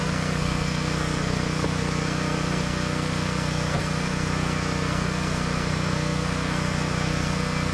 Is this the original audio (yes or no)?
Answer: no